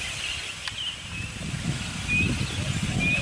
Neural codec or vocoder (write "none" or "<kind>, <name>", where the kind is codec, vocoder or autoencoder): none